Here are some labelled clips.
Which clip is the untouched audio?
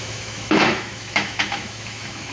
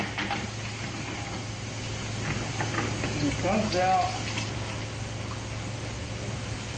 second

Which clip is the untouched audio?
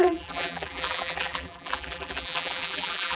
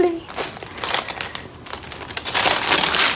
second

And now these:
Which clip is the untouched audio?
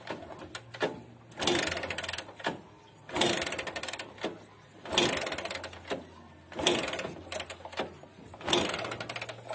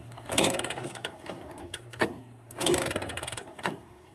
first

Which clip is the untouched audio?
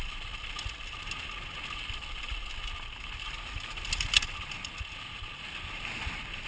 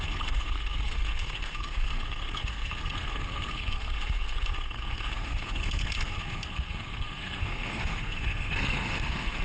first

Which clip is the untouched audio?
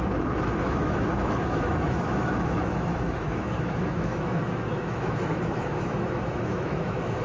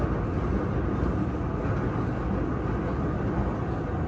second